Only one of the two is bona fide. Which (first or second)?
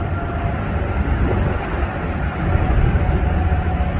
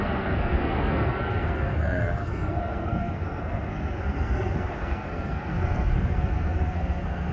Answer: first